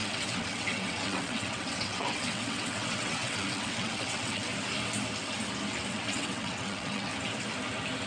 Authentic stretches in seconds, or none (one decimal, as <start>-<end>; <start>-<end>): 4.5-5.9; 7.1-8.1

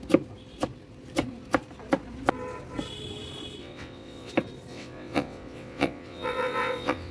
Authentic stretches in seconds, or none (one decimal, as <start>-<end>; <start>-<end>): 0.0-3.6; 4.3-4.7

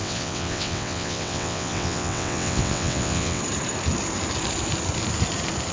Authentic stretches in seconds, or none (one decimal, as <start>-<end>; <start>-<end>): 3.4-5.7

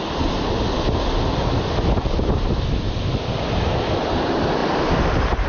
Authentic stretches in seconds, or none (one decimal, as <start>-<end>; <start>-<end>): 0.0-5.5

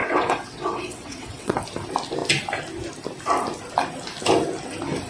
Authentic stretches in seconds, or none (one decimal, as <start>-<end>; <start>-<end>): 1.6-5.1